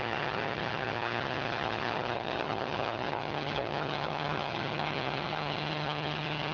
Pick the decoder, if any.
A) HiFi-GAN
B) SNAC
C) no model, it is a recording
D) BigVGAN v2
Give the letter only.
A